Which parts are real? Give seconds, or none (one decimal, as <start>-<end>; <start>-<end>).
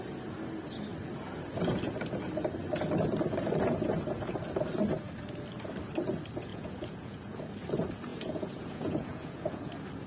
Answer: 0.0-6.5; 7.4-8.1; 9.7-10.1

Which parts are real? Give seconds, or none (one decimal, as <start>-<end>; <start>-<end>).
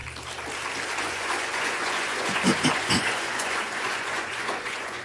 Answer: 0.0-1.0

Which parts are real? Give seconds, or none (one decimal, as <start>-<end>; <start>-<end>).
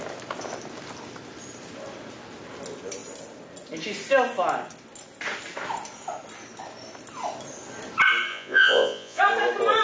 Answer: 0.0-8.3; 9.2-9.8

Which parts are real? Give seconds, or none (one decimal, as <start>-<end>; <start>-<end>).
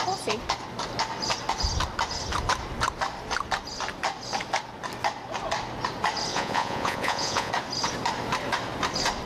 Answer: 0.0-6.3; 7.5-9.3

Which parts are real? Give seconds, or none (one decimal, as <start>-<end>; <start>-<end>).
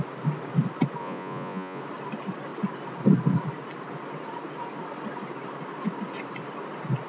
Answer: 0.0-1.0; 1.8-7.1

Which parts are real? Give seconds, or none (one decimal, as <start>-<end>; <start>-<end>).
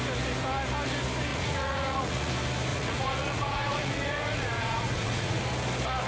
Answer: 0.0-1.3; 2.3-2.7; 5.4-6.1